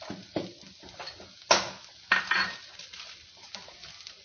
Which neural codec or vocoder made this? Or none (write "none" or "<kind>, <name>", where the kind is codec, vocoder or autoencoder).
none